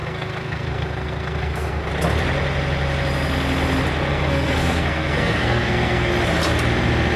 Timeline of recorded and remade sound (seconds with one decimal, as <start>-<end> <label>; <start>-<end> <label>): 0.0-1.9 remade; 1.9-4.1 recorded; 4.1-6.1 remade; 6.1-7.2 recorded